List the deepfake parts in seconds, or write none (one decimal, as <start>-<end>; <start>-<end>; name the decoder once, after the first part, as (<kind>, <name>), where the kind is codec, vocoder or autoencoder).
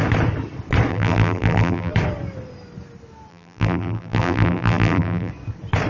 0.9-1.9 (vocoder, BigVGAN v2); 3.3-5.3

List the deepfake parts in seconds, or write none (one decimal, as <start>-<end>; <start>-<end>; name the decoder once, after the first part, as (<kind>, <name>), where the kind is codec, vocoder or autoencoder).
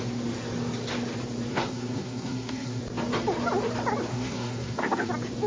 1.5-2.8 (codec, SNAC); 4.1-5.1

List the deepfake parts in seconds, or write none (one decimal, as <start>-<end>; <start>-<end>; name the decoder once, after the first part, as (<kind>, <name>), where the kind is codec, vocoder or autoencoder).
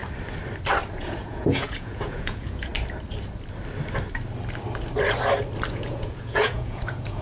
1.0-2.7 (vocoder, Vocos); 5.7-7.2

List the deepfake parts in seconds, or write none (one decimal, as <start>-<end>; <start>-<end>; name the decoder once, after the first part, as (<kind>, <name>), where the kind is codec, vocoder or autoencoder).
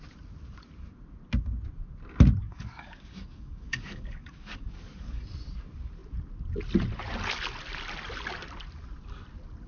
2.4-5.2 (codec, DAC)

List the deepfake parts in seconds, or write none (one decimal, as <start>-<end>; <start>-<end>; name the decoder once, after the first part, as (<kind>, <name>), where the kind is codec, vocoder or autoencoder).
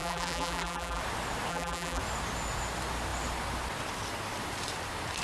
0.0-1.0 (vocoder, BigVGAN v2); 1.5-2.0